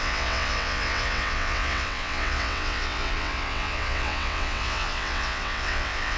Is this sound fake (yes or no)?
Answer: yes